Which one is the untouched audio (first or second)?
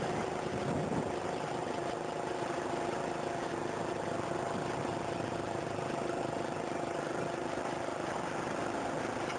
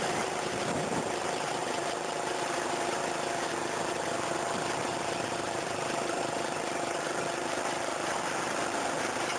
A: first